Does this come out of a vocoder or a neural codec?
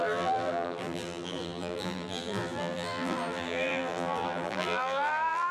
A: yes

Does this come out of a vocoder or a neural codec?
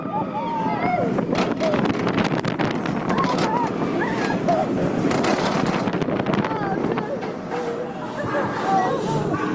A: no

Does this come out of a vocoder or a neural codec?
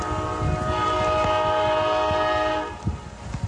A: no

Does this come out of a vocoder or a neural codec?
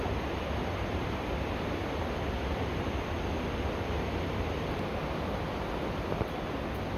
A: no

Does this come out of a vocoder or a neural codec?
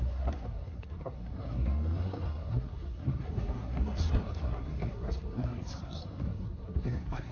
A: yes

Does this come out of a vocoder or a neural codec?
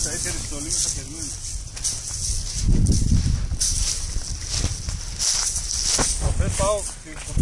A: no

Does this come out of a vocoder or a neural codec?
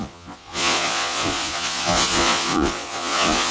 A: yes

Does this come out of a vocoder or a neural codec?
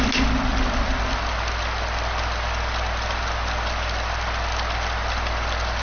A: no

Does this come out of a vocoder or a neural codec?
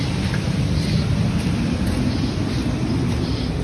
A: no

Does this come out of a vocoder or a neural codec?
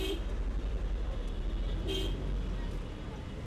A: no